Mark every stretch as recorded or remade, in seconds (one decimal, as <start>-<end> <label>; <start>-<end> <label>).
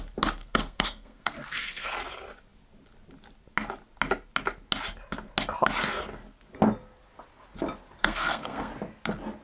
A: 0.0-0.4 recorded; 0.4-2.0 remade; 2.0-8.0 recorded; 8.0-8.7 remade; 8.7-9.4 recorded